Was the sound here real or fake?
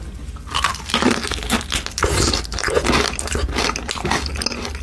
real